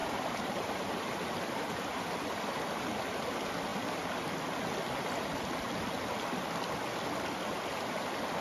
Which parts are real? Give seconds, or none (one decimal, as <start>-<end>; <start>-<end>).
2.1-8.4